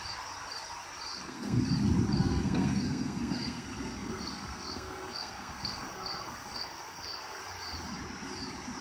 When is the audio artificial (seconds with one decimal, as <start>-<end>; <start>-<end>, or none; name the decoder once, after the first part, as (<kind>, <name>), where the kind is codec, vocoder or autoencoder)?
1.1-1.6 (codec, SNAC); 2.2-7.4